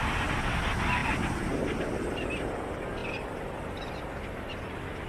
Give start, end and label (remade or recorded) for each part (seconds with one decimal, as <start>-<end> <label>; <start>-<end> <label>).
0.0-1.0 recorded; 1.0-2.4 remade; 2.4-5.1 recorded